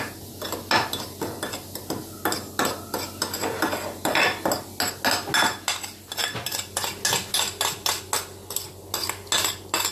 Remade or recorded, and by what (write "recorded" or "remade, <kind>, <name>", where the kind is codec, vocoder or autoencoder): recorded